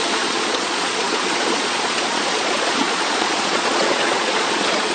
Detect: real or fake fake